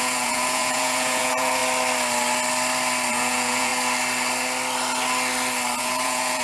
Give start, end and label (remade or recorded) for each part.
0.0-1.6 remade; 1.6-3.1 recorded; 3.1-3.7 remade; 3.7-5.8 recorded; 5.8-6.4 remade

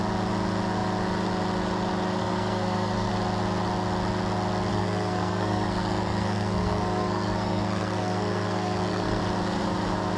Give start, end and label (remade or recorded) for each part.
0.0-2.2 recorded; 2.2-3.1 remade; 3.1-4.7 recorded; 4.7-9.2 remade; 9.2-10.2 recorded

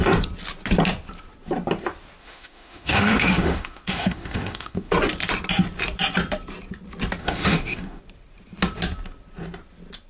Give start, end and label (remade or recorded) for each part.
0.0-2.2 recorded; 2.2-4.9 remade; 4.9-7.2 recorded; 7.2-8.0 remade; 8.0-10.1 recorded

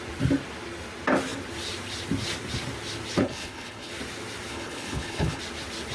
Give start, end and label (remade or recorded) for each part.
0.0-3.2 recorded; 3.2-3.9 remade; 3.9-4.5 recorded; 4.5-5.4 remade; 5.4-5.9 recorded